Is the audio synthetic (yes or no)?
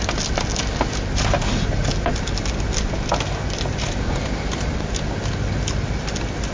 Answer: no